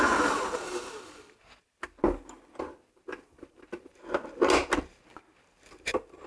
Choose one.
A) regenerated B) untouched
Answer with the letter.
B